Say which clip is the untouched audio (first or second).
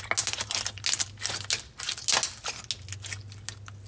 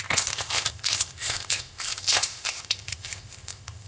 first